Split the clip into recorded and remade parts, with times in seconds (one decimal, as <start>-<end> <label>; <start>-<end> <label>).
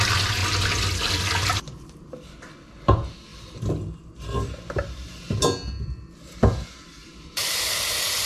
0.0-7.0 recorded; 7.0-7.8 remade; 7.8-8.3 recorded